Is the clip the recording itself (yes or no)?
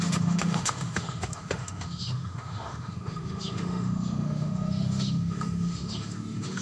no